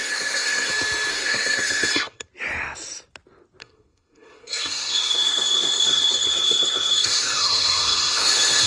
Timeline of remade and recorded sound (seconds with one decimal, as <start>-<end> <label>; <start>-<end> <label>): 0.0-0.7 remade; 0.7-1.1 recorded; 1.1-2.3 remade; 2.3-3.6 recorded; 3.6-8.7 remade